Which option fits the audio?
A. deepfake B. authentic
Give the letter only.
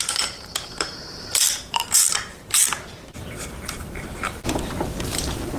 A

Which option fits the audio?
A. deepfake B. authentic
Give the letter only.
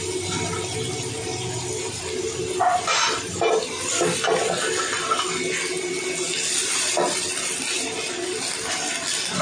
B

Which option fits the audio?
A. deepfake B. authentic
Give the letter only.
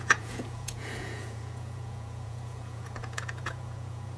A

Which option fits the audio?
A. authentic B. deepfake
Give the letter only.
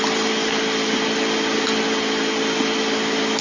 A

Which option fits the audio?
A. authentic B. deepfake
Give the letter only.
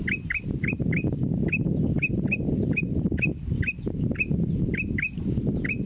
A